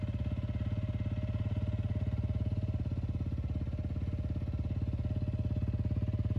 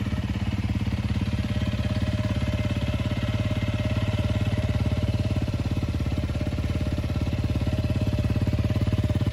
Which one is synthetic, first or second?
second